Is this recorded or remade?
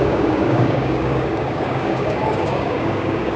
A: remade